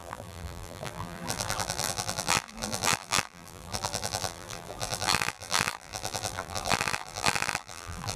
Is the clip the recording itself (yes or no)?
no